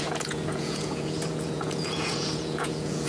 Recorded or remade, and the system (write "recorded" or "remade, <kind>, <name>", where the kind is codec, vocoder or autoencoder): remade, vocoder, Vocos